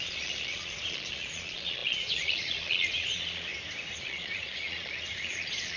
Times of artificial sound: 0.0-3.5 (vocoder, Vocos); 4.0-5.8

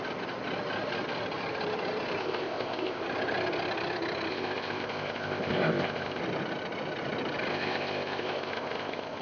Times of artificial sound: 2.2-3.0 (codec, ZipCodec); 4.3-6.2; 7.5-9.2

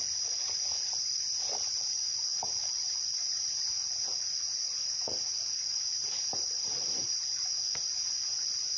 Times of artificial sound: none

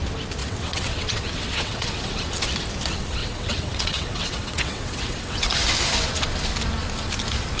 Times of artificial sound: 0.4-2.3 (vocoder, WaveNeXt); 3.2-5.5

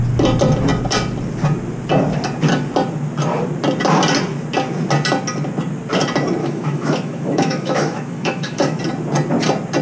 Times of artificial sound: 6.4-8.8 (autoencoder, DAC-VAE)

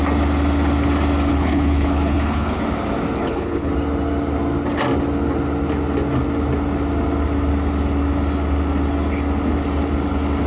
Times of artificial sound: 1.3-2.6 (codec, HILCodec); 3.2-3.7